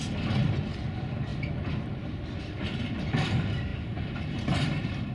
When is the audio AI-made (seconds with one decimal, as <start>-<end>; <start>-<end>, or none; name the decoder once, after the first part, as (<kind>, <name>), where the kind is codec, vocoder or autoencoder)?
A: 0.0-1.3 (vocoder, BigVGAN v2); 2.4-3.7; 4.4-5.1